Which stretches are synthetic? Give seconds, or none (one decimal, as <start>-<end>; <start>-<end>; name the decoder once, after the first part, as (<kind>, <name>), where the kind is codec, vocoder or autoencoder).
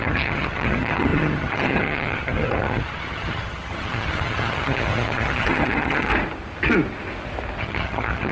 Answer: 0.0-6.1 (vocoder, HiFi-GAN); 7.6-8.3